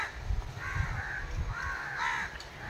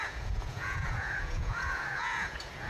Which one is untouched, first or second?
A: first